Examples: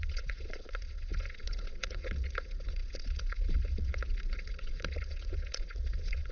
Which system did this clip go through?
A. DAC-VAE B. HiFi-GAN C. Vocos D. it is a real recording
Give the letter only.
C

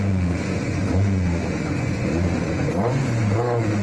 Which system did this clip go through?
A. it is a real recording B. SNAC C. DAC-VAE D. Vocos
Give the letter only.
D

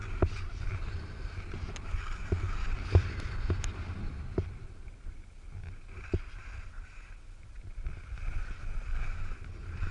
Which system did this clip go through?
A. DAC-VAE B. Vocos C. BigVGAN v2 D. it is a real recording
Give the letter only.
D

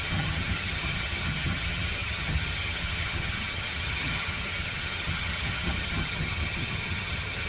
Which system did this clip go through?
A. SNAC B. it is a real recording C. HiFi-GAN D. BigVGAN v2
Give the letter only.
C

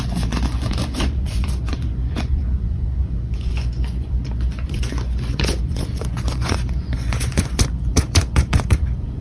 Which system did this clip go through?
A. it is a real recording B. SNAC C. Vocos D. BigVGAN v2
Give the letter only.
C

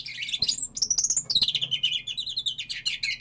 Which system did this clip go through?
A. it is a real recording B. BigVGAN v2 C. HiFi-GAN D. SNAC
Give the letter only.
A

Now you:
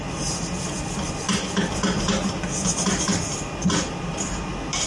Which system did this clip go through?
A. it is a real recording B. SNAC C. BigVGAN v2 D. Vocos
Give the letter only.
A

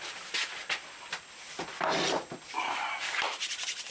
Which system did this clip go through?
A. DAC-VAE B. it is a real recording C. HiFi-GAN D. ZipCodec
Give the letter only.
B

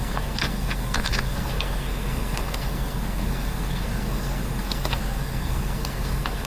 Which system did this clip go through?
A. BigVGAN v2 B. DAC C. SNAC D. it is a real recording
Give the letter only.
C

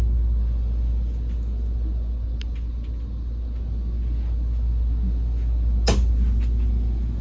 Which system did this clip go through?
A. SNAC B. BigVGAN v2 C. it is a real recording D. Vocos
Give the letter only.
C